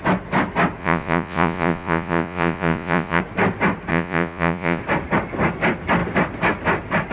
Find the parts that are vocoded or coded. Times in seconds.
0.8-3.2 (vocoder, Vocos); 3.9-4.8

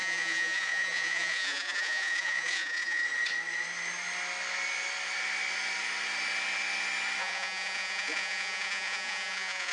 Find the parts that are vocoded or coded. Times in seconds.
0.0-3.0 (vocoder, Vocos); 7.2-9.7

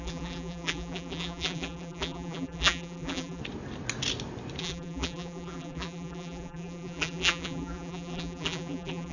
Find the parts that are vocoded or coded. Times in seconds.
0.0-3.4 (vocoder, BigVGAN v2); 4.6-9.1

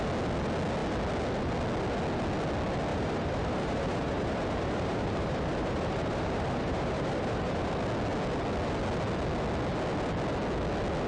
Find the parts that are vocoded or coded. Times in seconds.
2.9-7.7 (vocoder, BigVGAN v2)

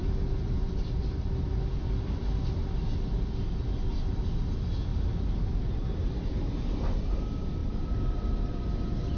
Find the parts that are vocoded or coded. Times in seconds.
0.0-1.8 (vocoder, BigVGAN v2); 7.6-8.7